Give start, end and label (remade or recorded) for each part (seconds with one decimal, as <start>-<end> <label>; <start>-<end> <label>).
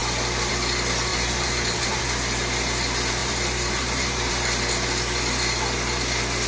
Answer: 0.0-1.1 recorded; 1.1-2.0 remade; 2.0-3.2 recorded; 3.2-4.3 remade; 4.3-6.5 recorded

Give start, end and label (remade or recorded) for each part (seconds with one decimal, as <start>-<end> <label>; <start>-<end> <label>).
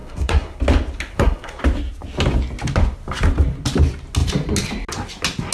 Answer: 0.0-0.6 remade; 0.6-1.1 recorded; 1.1-1.6 remade; 1.6-5.5 recorded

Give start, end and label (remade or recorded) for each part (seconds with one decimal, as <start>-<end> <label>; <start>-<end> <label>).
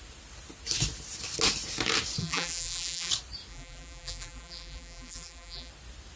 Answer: 0.0-2.2 recorded; 2.2-3.1 remade; 3.1-3.5 recorded; 3.5-5.7 remade; 5.7-6.2 recorded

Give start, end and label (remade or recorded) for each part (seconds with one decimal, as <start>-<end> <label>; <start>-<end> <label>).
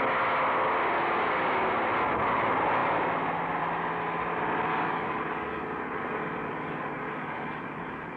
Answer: 0.0-4.7 recorded; 4.7-8.2 remade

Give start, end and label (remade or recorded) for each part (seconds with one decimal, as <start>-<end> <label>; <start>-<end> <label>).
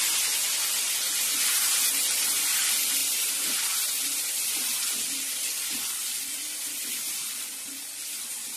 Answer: 0.0-3.0 recorded; 3.0-4.5 remade; 4.5-5.3 recorded; 5.3-7.1 remade; 7.1-8.6 recorded